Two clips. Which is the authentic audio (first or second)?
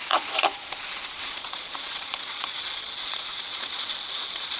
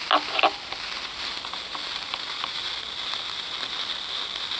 second